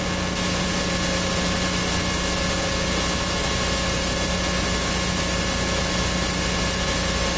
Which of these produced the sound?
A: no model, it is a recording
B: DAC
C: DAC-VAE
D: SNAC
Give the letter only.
A